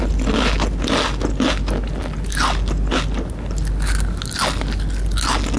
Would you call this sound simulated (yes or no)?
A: no